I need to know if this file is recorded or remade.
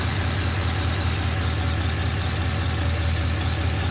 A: recorded